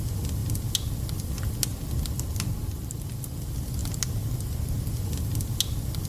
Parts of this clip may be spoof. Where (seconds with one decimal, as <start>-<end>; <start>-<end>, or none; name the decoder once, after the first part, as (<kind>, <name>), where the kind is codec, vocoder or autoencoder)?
none